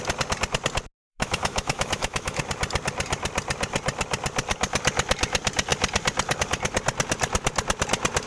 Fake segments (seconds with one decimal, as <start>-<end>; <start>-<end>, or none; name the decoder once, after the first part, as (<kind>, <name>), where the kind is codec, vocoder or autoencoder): 1.1-2.4 (autoencoder, DAC-VAE)